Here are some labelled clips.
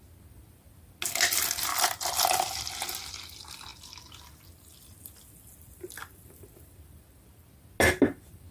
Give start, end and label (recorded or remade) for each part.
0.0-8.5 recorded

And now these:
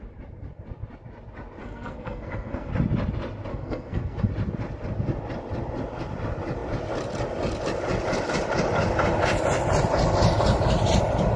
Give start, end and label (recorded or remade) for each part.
0.0-1.6 recorded; 1.6-2.7 remade; 2.7-3.5 recorded; 3.5-4.3 remade; 4.3-11.4 recorded

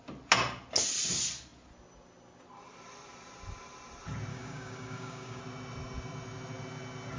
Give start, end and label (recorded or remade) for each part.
0.0-4.3 recorded; 4.3-5.4 remade; 5.4-7.2 recorded

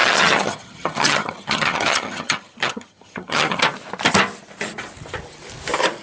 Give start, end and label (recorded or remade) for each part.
0.0-3.6 remade; 3.6-6.0 recorded